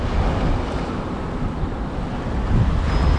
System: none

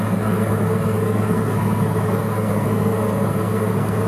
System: codec, SNAC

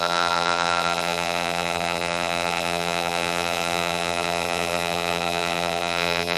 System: vocoder, BigVGAN v2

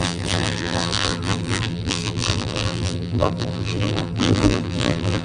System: vocoder, BigVGAN v2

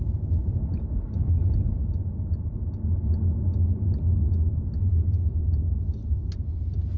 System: none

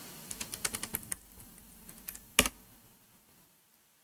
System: none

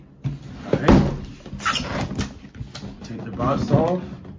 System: none